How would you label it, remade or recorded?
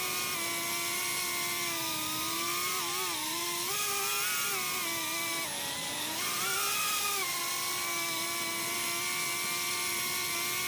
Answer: recorded